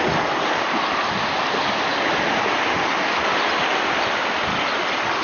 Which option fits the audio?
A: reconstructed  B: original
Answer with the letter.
B